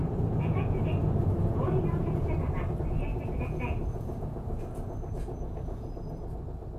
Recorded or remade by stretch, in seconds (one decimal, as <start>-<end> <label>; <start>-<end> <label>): 0.0-2.3 remade; 2.3-3.1 recorded; 3.1-6.3 remade; 6.3-6.8 recorded